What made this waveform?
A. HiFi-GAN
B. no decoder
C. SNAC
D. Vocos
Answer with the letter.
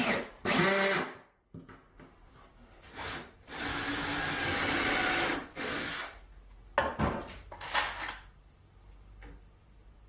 B